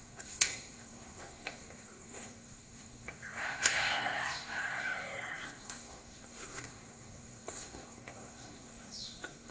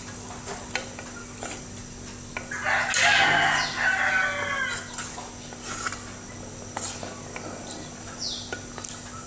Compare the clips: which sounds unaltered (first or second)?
second